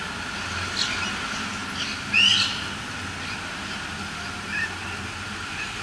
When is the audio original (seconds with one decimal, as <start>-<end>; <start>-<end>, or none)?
0.0-5.8